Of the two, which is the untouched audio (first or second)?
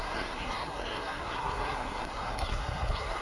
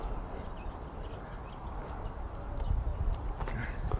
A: second